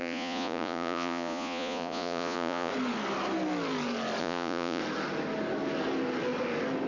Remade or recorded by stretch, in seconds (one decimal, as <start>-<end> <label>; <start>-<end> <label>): 0.0-2.7 remade; 2.7-4.2 recorded; 4.2-4.8 remade; 4.8-6.9 recorded